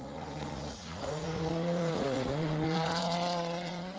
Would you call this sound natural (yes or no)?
no